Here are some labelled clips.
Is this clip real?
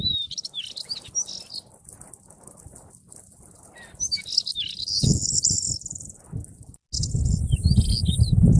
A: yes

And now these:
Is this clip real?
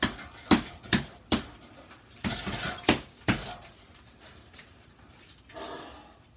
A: yes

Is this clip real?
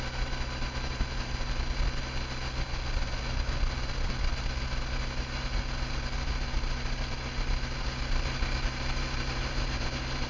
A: yes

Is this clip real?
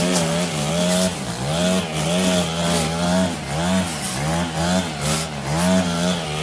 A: yes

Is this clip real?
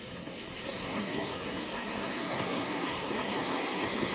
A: no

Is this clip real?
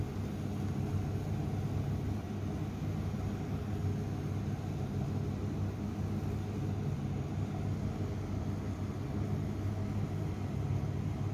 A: yes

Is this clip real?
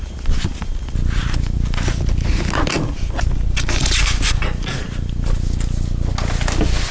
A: yes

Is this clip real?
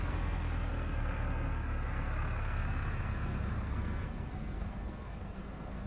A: no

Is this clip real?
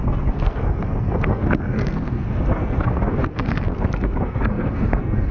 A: no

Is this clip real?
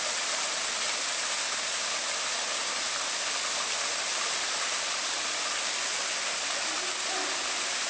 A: yes